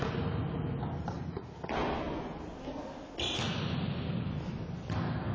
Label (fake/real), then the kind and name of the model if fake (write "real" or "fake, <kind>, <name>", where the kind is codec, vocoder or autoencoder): real